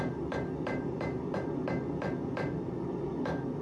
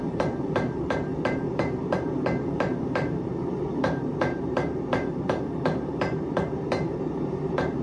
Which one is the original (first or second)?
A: first